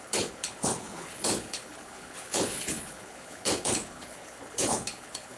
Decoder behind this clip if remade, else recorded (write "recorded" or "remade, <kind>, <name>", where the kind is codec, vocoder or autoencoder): remade, codec, HILCodec